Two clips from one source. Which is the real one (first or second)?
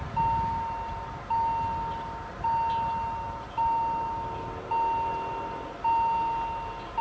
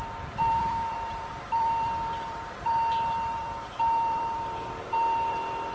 first